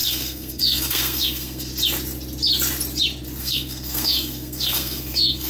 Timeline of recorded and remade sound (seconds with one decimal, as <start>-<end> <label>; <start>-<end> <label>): 0.0-1.7 remade; 1.7-3.4 recorded; 3.4-5.5 remade